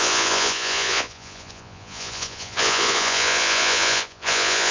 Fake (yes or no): yes